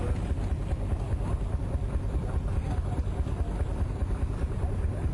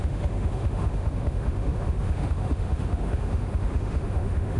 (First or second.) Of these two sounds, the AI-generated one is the second